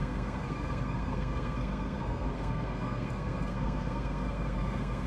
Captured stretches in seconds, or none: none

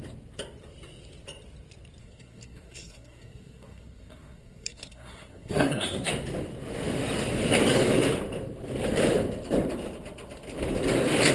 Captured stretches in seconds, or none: 0.0-2.0; 6.1-11.3